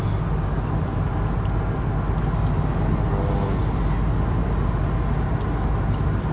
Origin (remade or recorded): recorded